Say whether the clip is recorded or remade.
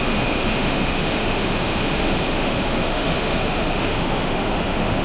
remade